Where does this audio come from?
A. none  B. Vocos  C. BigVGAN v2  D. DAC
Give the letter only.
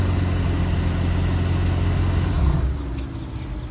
A